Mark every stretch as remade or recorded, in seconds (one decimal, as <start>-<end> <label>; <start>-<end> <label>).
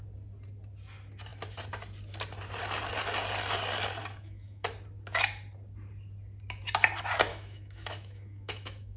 0.0-4.0 recorded; 4.0-4.7 remade; 4.7-7.3 recorded; 7.3-9.0 remade